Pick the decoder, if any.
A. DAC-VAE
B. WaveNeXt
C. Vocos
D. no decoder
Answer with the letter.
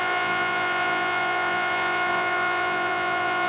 C